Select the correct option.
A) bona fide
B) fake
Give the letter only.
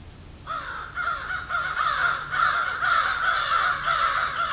A